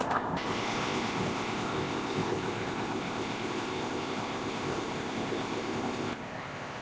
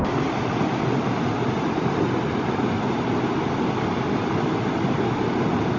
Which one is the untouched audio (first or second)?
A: second